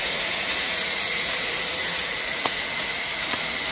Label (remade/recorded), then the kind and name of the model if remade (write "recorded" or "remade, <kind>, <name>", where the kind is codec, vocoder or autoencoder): remade, vocoder, Vocos